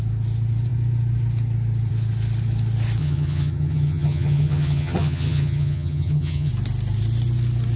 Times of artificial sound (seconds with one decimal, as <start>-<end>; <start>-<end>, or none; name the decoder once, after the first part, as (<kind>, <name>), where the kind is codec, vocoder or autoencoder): 3.0-6.5 (vocoder, HiFi-GAN)